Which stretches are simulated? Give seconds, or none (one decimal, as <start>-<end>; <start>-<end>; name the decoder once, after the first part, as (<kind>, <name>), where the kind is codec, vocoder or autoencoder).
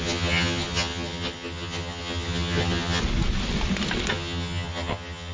0.0-3.0 (vocoder, HiFi-GAN); 4.1-5.3